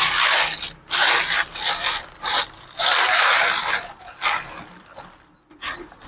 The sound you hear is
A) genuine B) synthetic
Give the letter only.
A